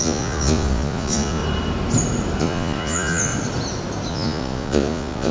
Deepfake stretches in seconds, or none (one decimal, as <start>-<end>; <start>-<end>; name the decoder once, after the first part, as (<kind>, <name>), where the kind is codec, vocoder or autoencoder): 0.0-1.4 (vocoder, Vocos); 2.4-3.3; 4.1-5.3